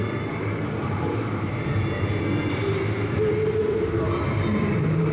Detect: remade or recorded remade